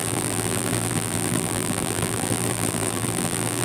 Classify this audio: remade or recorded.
remade